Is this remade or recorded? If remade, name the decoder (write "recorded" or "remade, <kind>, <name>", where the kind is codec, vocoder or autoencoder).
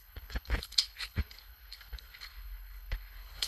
remade, codec, HILCodec